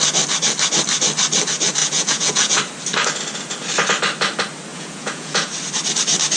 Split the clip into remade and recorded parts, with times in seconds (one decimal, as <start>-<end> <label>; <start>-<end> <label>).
0.0-1.8 recorded; 1.8-2.6 remade; 2.6-4.7 recorded; 4.7-5.5 remade; 5.5-6.4 recorded

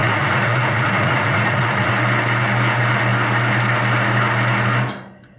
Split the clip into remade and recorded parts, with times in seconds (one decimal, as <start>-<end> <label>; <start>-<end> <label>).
0.0-1.9 remade; 1.9-5.4 recorded

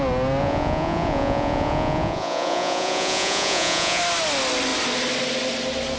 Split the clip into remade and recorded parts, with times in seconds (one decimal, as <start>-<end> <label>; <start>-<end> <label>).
0.0-0.4 recorded; 0.4-4.0 remade; 4.0-6.0 recorded

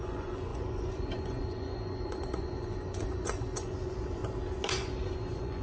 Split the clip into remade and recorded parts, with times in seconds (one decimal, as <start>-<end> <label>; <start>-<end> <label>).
0.0-4.2 remade; 4.2-4.7 recorded; 4.7-5.6 remade

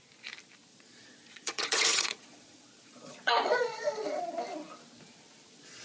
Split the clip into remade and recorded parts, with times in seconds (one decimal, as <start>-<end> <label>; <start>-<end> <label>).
0.0-0.7 recorded; 0.7-4.2 remade; 4.2-5.8 recorded